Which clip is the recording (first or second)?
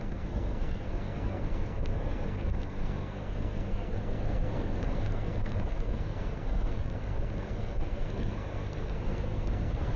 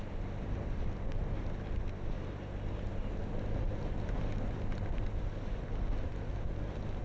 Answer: second